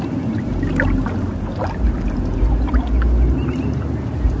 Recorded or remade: recorded